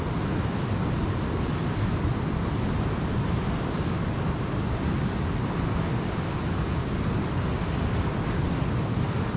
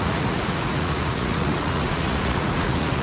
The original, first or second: first